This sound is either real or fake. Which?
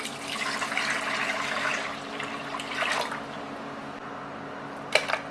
real